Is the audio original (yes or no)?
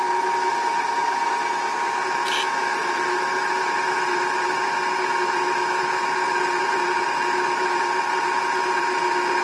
no